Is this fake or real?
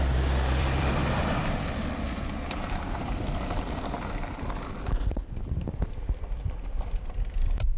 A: fake